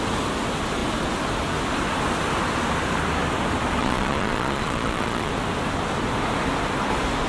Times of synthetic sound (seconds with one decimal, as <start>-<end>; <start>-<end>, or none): 3.8-5.3